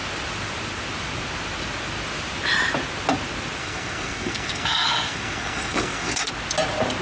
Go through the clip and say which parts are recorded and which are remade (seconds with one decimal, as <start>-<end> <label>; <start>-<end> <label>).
0.0-3.6 recorded; 3.6-6.3 remade; 6.3-7.0 recorded